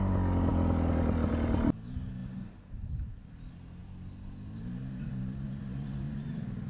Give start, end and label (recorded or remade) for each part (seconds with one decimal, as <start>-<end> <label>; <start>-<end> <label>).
0.0-6.7 recorded